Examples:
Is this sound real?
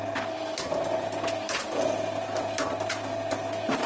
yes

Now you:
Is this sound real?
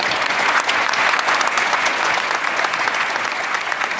no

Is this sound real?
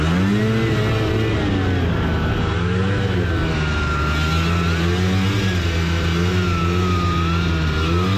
yes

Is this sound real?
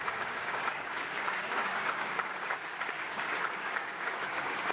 no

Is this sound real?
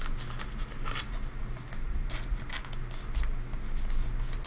yes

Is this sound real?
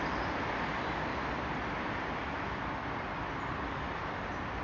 yes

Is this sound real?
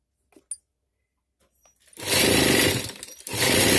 yes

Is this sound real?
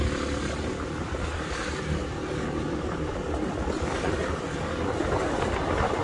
yes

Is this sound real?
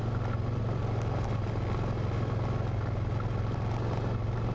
yes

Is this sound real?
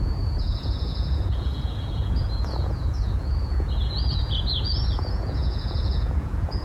no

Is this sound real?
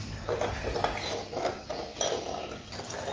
yes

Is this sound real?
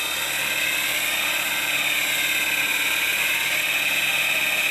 yes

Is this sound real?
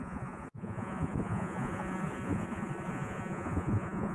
no